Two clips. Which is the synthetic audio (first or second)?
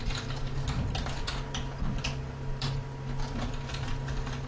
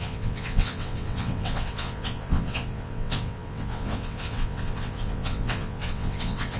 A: second